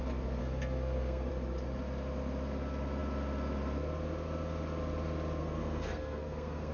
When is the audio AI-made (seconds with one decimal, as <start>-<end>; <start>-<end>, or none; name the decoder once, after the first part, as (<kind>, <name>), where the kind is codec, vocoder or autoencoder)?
0.4-1.3 (codec, SNAC); 5.4-6.7